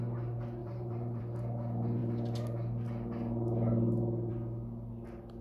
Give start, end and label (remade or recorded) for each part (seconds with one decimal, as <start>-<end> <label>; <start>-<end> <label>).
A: 0.0-0.6 recorded; 0.6-1.2 remade; 1.2-5.4 recorded